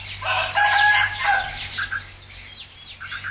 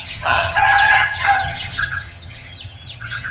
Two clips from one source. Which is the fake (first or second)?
second